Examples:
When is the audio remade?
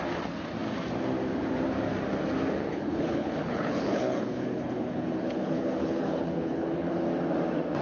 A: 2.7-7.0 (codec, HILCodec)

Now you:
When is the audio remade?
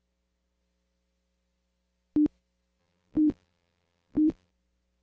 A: 2.8-4.5 (vocoder, BigVGAN v2)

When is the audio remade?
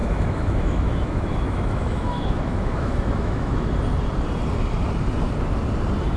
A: 0.0-3.7 (autoencoder, DAC-VAE)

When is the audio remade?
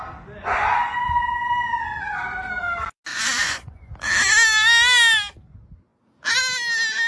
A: 0.4-1.5 (vocoder, Vocos); 3.1-3.9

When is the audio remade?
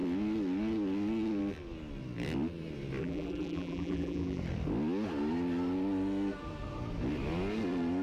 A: 3.0-4.4 (vocoder, BigVGAN v2)